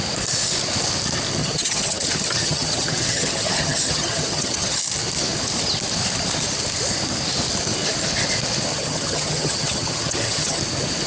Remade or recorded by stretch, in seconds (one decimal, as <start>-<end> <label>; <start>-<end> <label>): 0.0-1.4 recorded; 1.4-4.8 remade; 4.8-8.7 recorded; 8.7-10.6 remade; 10.6-11.1 recorded